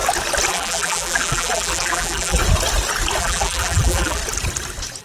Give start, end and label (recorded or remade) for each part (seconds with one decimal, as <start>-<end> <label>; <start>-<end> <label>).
0.0-0.5 recorded; 0.5-2.4 remade; 2.4-3.2 recorded; 3.2-4.2 remade; 4.2-5.0 recorded